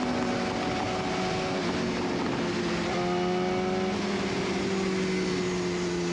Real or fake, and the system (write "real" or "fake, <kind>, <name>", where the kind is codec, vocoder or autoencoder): real